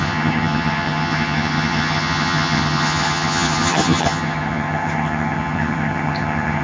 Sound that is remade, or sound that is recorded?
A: remade